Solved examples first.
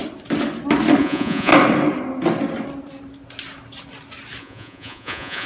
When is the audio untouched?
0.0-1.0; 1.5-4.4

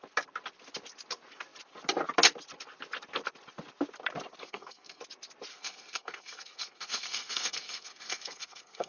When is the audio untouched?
0.0-4.4; 5.0-5.5

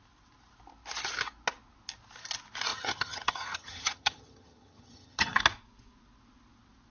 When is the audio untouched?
0.0-2.7; 5.4-6.9

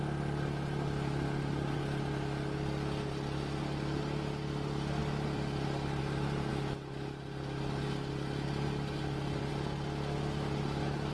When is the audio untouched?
0.0-11.1

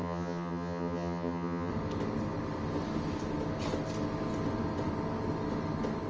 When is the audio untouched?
1.7-6.1

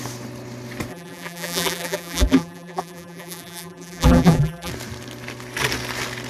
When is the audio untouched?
0.0-0.9; 4.7-6.3

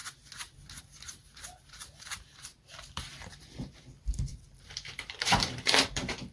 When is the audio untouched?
0.0-0.8